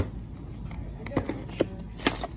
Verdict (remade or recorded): recorded